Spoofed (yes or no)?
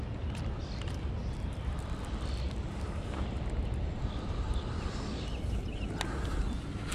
no